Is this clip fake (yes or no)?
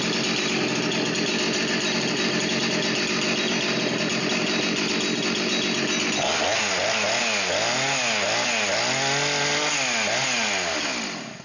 no